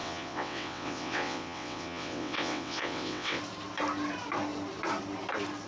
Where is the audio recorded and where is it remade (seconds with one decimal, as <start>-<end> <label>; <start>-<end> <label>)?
0.0-3.4 remade; 3.4-5.7 recorded